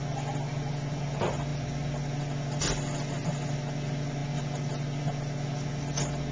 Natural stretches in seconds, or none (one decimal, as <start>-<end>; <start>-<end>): 0.0-6.3